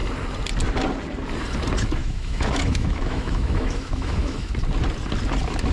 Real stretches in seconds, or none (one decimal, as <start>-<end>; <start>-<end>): 0.0-2.0; 4.5-5.7